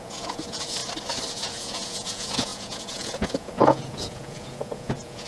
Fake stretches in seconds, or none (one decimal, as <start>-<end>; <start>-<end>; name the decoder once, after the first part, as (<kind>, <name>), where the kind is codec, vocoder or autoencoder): 0.0-0.8 (vocoder, Vocos); 1.3-5.3